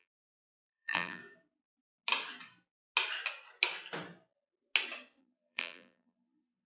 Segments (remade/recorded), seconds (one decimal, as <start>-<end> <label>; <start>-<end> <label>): 0.0-1.2 remade; 1.2-5.2 recorded; 5.2-6.7 remade